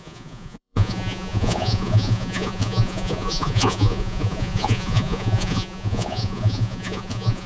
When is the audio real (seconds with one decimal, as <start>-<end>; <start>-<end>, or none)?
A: none